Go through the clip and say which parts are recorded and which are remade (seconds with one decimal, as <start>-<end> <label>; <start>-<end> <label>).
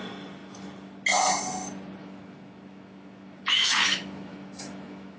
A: 0.0-2.0 recorded; 2.0-5.2 remade